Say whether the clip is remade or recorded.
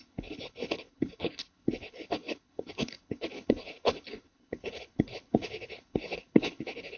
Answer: remade